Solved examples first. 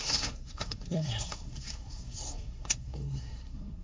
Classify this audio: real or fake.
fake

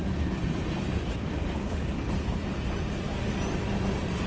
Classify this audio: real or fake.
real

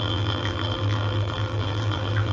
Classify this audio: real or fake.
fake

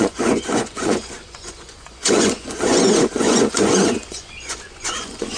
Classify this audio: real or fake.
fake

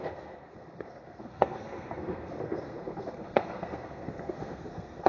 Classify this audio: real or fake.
fake